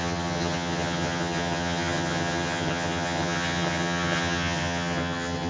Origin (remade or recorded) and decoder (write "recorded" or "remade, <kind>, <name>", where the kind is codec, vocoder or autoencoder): remade, vocoder, HiFi-GAN